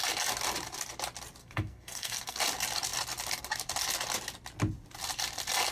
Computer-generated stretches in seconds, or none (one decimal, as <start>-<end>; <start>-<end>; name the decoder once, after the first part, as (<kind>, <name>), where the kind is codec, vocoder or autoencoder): 1.4-2.4 (codec, SNAC)